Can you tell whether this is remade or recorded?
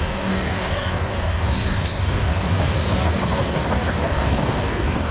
remade